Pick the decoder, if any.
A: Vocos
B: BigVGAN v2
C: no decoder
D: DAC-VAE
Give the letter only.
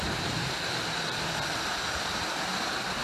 B